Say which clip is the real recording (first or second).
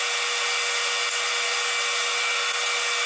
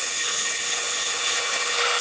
first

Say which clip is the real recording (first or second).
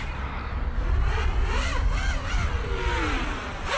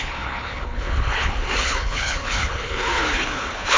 first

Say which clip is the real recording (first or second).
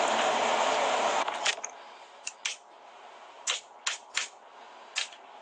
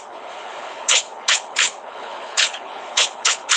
first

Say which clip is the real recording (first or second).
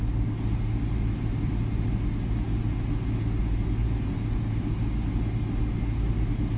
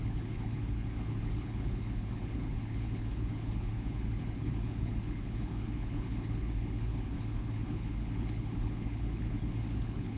first